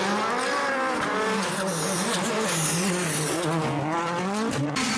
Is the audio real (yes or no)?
yes